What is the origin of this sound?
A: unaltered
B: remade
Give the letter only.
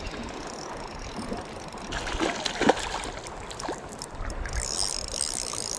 A